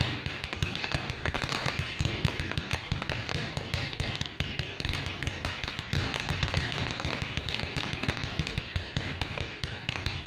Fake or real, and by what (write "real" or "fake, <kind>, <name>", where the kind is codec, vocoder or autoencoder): fake, codec, DAC